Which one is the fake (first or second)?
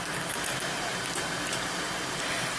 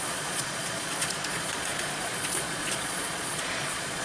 second